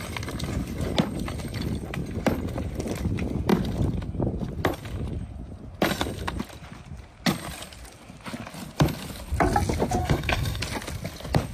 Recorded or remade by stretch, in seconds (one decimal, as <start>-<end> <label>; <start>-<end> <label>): 0.0-10.0 recorded; 10.0-10.6 remade; 10.6-11.5 recorded